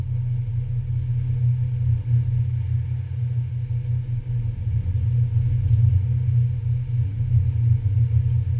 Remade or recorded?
recorded